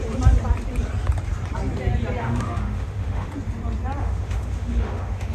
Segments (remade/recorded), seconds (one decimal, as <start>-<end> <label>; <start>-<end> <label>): 0.0-2.2 recorded; 2.2-3.3 remade; 3.3-4.0 recorded; 4.0-5.3 remade